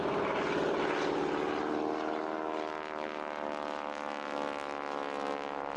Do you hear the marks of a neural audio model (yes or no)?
no